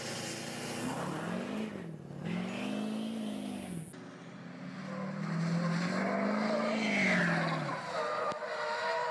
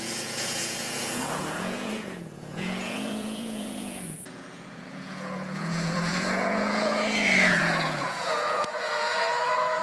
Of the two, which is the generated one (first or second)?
second